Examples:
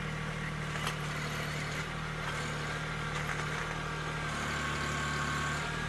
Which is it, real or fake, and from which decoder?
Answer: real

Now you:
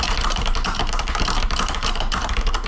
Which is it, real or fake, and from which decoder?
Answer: real